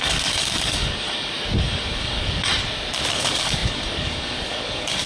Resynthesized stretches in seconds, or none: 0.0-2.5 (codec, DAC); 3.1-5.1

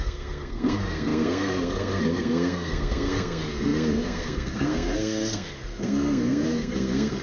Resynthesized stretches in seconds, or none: 0.0-7.2 (codec, SNAC)

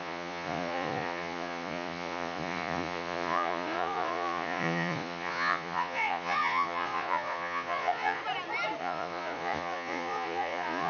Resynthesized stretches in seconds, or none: 0.0-8.2 (vocoder, Vocos); 8.8-10.9

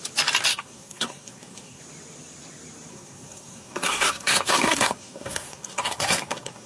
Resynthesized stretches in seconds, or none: 0.5-1.8 (codec, SNAC); 2.9-6.7